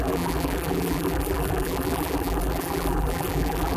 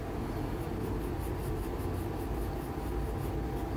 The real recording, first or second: second